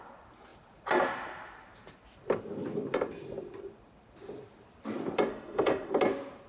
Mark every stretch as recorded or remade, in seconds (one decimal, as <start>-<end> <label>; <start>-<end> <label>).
0.0-5.3 recorded; 5.3-5.9 remade; 5.9-6.5 recorded